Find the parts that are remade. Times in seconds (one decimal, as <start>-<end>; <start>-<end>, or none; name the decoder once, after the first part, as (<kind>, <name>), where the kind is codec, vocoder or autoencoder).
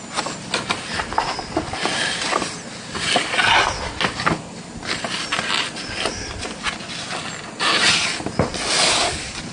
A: none